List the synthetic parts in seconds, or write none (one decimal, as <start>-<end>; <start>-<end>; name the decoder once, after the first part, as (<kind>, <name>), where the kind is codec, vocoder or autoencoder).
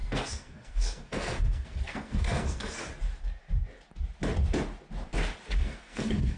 0.0-2.8 (codec, SNAC); 5.5-6.4